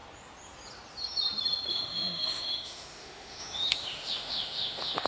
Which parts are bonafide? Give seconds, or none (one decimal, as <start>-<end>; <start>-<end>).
0.0-1.7